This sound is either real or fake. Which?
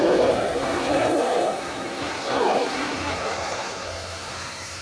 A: fake